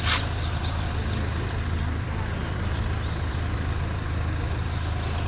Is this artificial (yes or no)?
yes